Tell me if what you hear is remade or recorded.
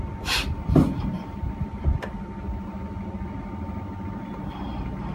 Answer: recorded